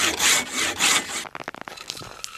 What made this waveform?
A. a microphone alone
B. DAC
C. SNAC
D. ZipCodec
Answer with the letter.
A